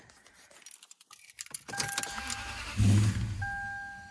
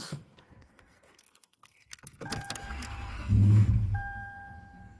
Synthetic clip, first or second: second